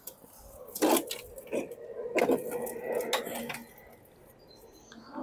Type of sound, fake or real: real